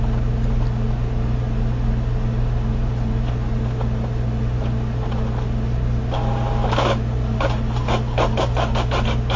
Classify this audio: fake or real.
real